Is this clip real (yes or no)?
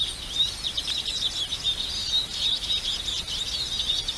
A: yes